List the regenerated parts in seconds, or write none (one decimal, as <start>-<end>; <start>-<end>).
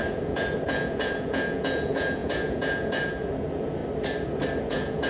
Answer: 0.0-3.8; 4.6-5.1